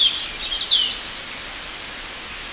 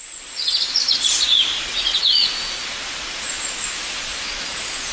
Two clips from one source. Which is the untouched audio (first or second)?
first